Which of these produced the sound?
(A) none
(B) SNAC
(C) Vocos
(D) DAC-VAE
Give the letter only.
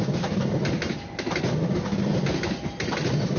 A